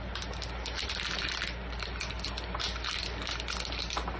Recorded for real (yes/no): yes